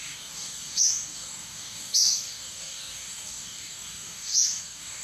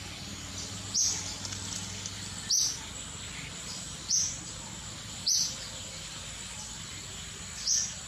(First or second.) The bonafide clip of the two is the second